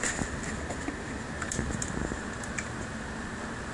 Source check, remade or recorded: recorded